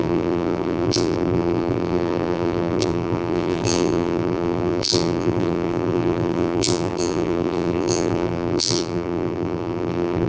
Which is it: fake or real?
fake